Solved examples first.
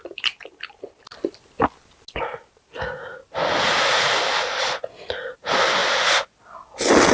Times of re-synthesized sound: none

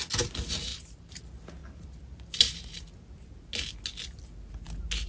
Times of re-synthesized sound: 0.7-1.2 (vocoder, BigVGAN v2)

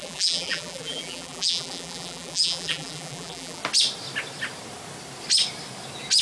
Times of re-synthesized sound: 0.0-3.6 (vocoder, BigVGAN v2)

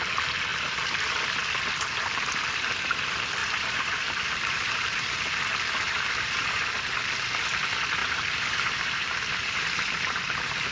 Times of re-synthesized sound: 0.5-1.1 (vocoder, BigVGAN v2); 3.4-6.6; 8.0-10.7

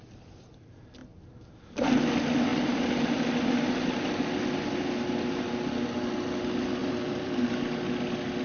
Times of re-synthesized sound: 1.0-1.8 (vocoder, BigVGAN v2); 2.5-3.7; 6.8-7.4

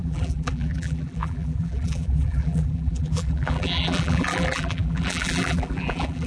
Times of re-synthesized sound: 0.0-6.3 (vocoder, BigVGAN v2)

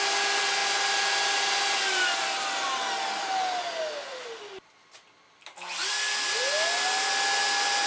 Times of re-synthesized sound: none